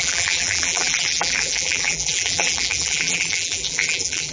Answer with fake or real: fake